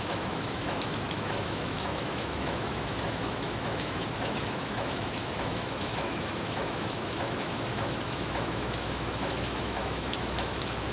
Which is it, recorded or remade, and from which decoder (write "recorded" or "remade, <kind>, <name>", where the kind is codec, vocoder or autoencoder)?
remade, autoencoder, DAC-VAE